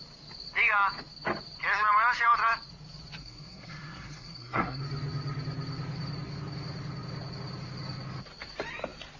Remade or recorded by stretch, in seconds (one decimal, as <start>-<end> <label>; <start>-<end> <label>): 0.0-3.2 recorded; 3.2-4.8 remade; 4.8-9.2 recorded